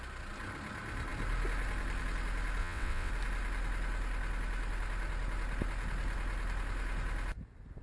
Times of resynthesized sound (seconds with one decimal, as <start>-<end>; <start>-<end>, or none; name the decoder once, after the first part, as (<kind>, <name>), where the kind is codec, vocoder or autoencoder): 2.6-3.1 (vocoder, WaveNeXt)